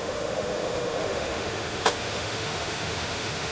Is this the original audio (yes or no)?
no